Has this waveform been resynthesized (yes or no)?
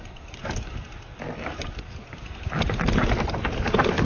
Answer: no